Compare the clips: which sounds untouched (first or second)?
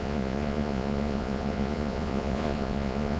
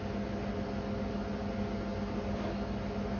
second